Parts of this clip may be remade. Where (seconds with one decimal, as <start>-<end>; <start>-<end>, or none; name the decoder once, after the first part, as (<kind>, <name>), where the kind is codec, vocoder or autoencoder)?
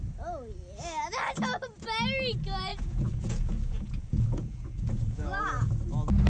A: 2.7-5.7 (vocoder, Vocos)